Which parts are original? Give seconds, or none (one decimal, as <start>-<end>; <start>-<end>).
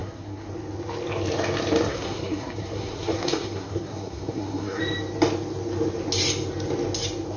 0.5-1.9; 4.8-7.4